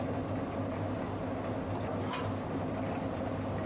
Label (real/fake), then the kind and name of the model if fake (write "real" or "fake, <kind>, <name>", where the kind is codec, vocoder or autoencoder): real